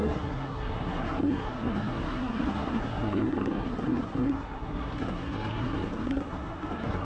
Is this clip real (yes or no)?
no